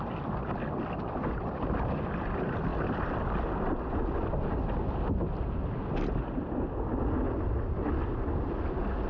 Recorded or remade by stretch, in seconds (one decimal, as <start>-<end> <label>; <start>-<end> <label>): 0.0-9.1 recorded